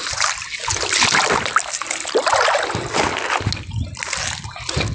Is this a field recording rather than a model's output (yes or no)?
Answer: yes